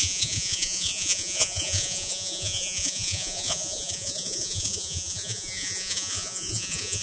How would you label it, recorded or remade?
remade